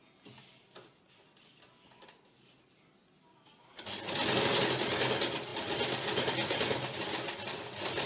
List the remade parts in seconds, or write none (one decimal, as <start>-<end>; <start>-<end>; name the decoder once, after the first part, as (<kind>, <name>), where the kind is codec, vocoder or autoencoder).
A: none